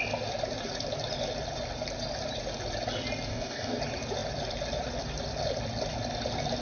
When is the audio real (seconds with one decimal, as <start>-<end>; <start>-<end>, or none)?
0.0-3.3; 3.8-6.6